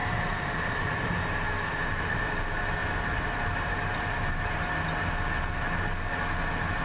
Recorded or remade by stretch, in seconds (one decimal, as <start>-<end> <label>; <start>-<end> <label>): 0.0-1.2 remade; 1.2-2.8 recorded; 2.8-4.7 remade; 4.7-6.8 recorded